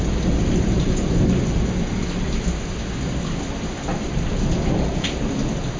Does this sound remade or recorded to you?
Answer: recorded